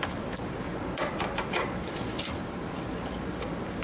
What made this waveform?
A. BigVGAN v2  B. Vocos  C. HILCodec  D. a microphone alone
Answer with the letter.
A